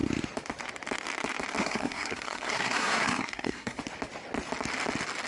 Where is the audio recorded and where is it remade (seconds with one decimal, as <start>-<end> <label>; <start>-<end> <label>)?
0.0-1.6 recorded; 1.6-3.8 remade; 3.8-5.3 recorded